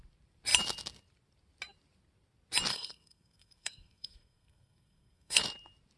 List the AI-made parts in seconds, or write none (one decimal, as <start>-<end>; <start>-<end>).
2.7-5.4